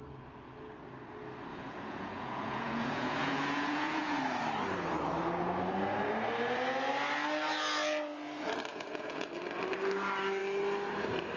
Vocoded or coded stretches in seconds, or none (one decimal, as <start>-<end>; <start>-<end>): 1.5-4.2; 8.7-9.3